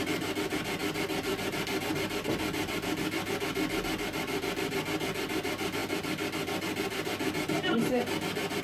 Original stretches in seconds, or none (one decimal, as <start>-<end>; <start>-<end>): 0.0-8.6